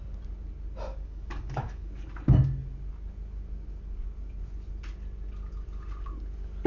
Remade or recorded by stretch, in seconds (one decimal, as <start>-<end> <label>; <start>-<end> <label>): 0.0-0.9 recorded; 0.9-1.9 remade; 1.9-6.7 recorded